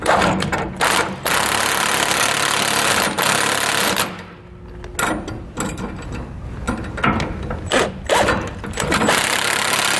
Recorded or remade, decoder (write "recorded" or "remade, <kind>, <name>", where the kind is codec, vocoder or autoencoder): recorded